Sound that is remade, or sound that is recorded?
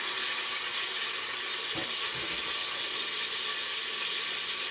recorded